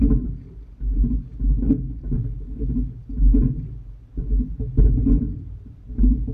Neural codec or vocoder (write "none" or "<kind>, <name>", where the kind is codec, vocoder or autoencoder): none